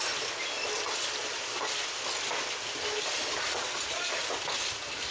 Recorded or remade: recorded